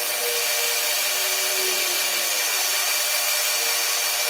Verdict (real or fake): real